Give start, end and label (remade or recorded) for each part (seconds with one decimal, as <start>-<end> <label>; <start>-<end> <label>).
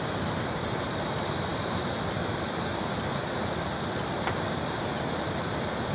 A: 0.0-5.9 recorded